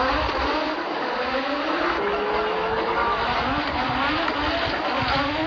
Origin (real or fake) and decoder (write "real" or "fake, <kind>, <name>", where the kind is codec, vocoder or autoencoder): real